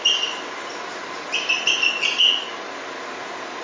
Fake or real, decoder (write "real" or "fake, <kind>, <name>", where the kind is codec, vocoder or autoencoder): real